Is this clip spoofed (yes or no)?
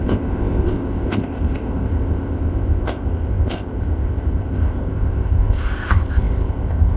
yes